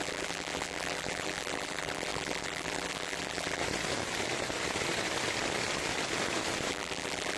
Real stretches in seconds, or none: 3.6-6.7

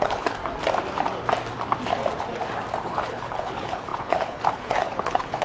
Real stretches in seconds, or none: 0.4-2.8

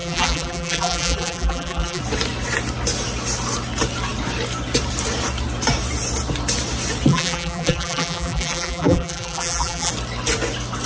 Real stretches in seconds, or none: 2.0-7.1; 9.9-10.9

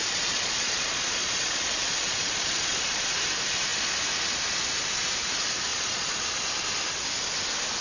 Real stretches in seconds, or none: 3.1-5.7; 6.2-7.8

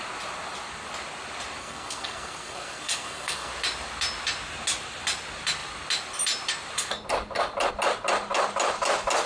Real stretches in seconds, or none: 0.0-1.6; 3.5-9.3